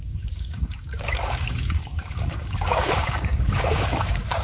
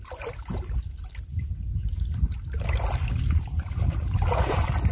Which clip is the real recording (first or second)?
second